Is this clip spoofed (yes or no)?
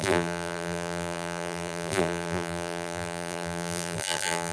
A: yes